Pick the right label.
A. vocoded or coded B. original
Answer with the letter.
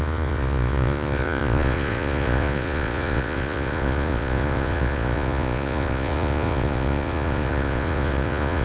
A